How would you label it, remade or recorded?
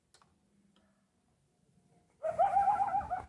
recorded